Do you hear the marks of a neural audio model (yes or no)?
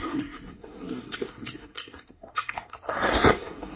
yes